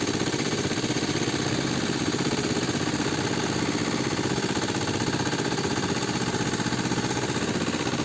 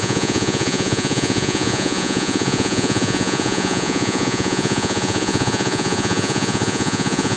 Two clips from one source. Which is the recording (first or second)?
first